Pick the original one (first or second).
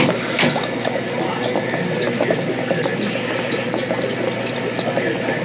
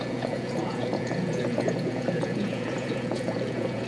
first